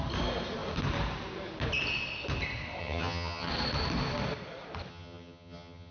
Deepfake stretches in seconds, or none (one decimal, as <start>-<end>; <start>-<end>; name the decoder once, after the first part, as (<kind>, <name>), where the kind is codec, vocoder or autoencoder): 2.8-3.5 (vocoder, HiFi-GAN); 4.9-5.9